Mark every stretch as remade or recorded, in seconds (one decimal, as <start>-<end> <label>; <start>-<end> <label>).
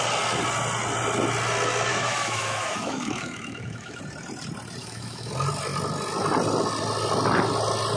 0.0-1.9 recorded; 1.9-4.0 remade; 4.0-4.8 recorded; 4.8-5.3 remade; 5.3-8.0 recorded